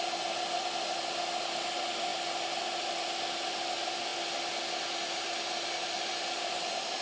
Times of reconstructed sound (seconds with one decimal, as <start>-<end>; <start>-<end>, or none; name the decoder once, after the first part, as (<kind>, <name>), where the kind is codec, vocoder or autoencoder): none